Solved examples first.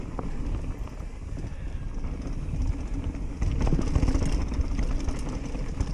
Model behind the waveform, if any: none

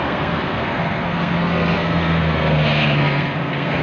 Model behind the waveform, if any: codec, SNAC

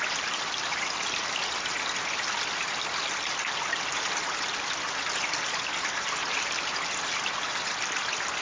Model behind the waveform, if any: none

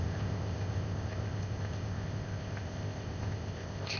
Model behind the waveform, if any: codec, ZipCodec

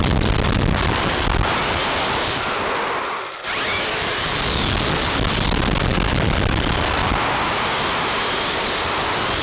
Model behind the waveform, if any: none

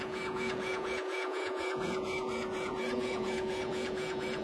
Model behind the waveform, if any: vocoder, Vocos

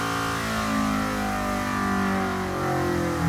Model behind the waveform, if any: none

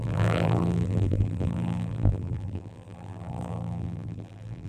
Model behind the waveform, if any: vocoder, BigVGAN v2